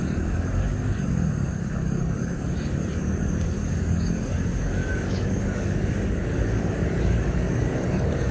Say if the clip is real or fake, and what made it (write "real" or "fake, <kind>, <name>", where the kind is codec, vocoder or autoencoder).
fake, codec, DAC